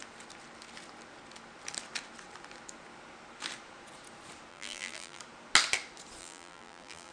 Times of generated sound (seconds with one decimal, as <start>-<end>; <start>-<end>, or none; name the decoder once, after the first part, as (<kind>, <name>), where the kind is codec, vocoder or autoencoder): 4.5-5.2 (vocoder, BigVGAN v2); 6.2-7.1